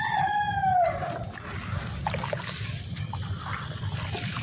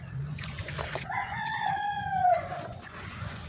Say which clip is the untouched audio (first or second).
first